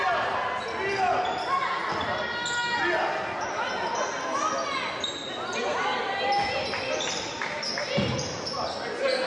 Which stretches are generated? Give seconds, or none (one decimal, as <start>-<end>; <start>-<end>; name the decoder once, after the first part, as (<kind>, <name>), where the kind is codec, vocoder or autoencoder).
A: none